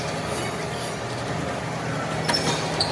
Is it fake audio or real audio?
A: real